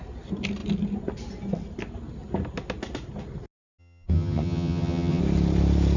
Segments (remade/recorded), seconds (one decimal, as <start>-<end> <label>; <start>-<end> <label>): 0.0-3.8 recorded; 3.8-5.2 remade; 5.2-6.0 recorded